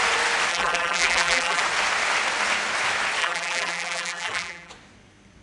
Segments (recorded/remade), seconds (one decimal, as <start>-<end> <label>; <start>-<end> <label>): 0.0-0.5 recorded; 0.5-1.6 remade; 1.6-3.2 recorded; 3.2-4.7 remade; 4.7-5.4 recorded